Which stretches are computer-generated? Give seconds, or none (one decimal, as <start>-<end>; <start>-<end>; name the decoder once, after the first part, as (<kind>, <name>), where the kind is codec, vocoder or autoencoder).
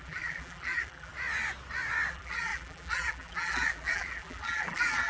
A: 0.0-1.1 (vocoder, BigVGAN v2); 2.1-5.1